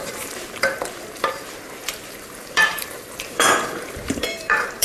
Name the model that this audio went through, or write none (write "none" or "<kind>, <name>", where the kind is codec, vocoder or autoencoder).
vocoder, BigVGAN v2